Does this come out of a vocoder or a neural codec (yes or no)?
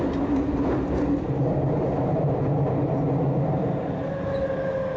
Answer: no